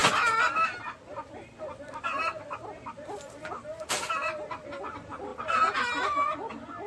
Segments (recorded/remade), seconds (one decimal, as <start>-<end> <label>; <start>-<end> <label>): 0.0-6.9 recorded